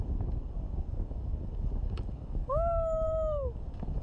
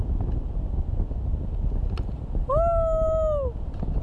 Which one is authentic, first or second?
second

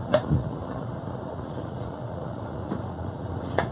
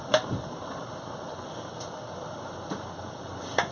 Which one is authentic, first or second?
second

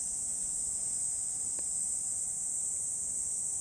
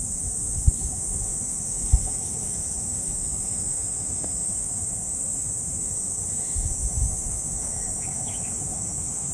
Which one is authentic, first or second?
first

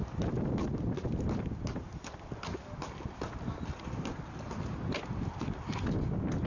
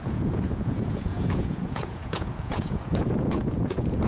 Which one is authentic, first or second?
first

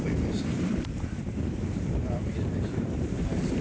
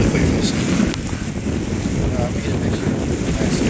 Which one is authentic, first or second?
second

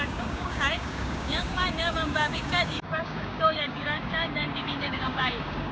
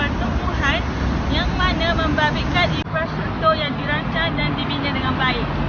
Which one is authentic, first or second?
second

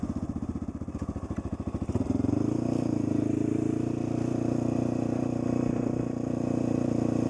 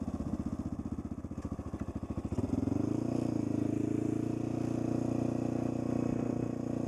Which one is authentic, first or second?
second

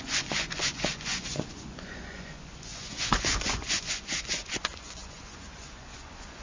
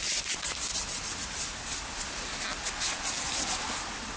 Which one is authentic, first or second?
second